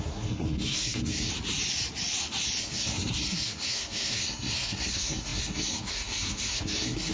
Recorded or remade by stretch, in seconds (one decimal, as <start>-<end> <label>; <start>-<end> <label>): 0.0-1.3 remade; 1.3-2.6 recorded; 2.6-7.1 remade